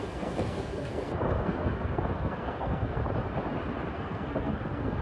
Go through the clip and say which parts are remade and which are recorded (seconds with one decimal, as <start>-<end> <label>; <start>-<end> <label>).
0.0-3.0 remade; 3.0-3.9 recorded; 3.9-5.0 remade